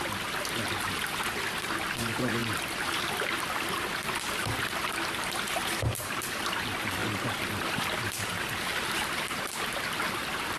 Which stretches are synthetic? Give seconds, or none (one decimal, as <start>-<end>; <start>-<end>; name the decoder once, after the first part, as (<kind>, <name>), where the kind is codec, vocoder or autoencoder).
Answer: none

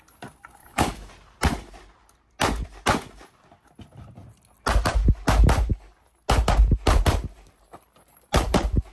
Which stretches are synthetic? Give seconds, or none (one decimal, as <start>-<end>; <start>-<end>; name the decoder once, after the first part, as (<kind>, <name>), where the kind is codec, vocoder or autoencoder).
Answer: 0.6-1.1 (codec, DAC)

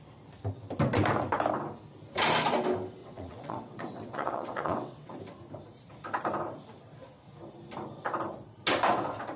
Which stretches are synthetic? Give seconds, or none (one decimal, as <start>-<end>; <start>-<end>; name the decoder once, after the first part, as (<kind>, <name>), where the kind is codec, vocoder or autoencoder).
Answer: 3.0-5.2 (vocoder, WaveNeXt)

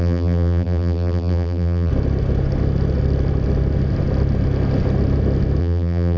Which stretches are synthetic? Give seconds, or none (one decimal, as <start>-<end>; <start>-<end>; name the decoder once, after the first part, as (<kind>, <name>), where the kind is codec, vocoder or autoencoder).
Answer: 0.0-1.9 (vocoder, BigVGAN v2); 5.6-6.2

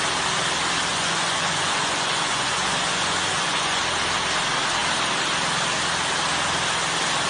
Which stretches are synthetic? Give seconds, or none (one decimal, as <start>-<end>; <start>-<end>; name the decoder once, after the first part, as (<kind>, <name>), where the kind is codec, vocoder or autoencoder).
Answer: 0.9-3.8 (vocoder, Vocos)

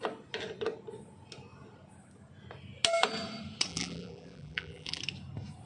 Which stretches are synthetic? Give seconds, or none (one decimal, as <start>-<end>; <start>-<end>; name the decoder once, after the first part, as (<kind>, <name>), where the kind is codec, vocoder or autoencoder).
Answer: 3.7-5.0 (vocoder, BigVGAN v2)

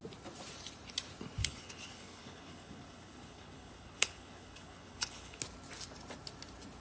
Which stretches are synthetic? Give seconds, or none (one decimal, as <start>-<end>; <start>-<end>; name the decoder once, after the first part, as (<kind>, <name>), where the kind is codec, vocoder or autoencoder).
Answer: 1.4-5.4 (codec, HILCodec)

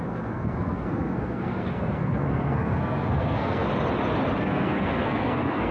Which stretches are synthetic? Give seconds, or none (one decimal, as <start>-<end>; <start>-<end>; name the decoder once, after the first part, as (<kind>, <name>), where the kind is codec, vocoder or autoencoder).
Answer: 0.0-3.7 (codec, SNAC); 4.4-5.7